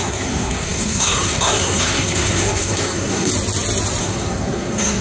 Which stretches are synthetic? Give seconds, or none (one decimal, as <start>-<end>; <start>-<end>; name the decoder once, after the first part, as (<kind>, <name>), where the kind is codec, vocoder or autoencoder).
0.0-3.3 (codec, SNAC); 4.0-5.0